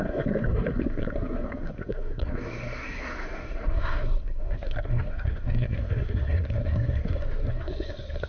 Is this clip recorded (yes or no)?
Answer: no